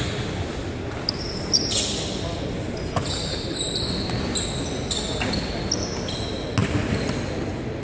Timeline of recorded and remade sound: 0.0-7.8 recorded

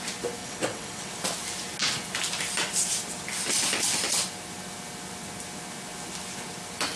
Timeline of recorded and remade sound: 0.0-0.4 recorded; 0.4-1.1 remade; 1.1-7.0 recorded